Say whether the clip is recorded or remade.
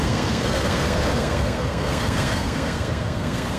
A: remade